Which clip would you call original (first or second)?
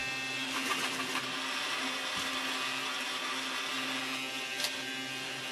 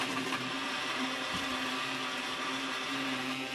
first